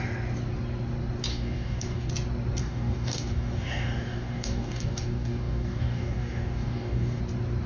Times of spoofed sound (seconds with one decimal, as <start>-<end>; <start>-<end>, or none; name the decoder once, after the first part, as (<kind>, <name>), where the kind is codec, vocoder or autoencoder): 1.3-2.1 (codec, DAC); 2.6-7.2